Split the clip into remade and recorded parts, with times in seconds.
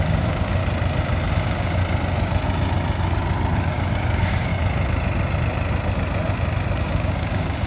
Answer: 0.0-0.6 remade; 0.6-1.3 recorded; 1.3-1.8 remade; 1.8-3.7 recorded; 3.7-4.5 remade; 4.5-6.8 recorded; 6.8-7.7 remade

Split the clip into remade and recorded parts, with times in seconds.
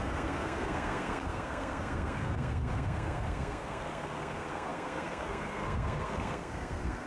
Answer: 0.0-7.1 remade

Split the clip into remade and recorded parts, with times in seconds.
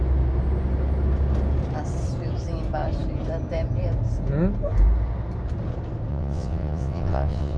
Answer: 0.0-6.1 recorded; 6.1-7.6 remade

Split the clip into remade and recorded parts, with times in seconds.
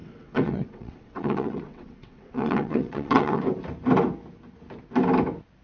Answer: 0.0-3.4 remade; 3.4-5.6 recorded